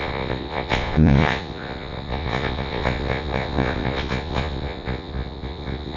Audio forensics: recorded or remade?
remade